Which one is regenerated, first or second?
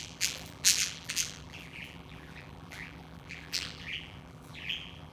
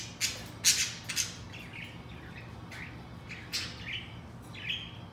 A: first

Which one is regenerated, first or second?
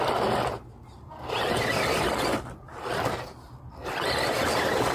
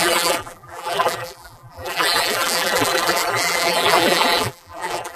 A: second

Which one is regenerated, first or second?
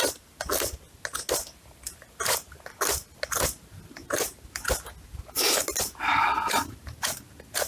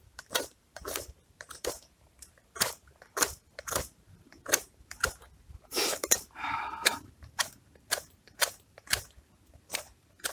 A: second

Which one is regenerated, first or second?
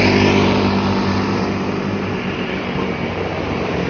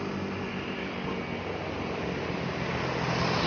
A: first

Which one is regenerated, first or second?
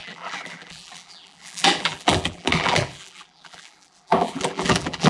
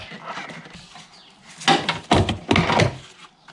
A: first